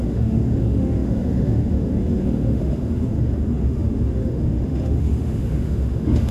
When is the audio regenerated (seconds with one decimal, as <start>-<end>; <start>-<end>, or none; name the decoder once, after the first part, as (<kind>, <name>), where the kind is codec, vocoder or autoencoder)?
0.0-6.3 (autoencoder, DAC-VAE)